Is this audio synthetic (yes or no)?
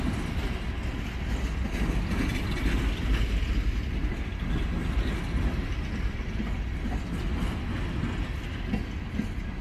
no